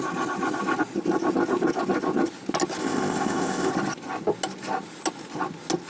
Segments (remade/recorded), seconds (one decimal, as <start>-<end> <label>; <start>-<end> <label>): 0.0-2.8 recorded; 2.8-3.7 remade; 3.7-5.9 recorded